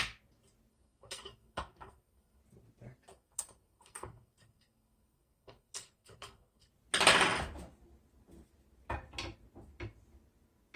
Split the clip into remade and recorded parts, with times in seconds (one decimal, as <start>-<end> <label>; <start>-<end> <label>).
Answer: 0.0-0.7 recorded; 0.7-2.4 remade; 2.4-3.1 recorded; 3.1-6.7 remade; 6.7-10.8 recorded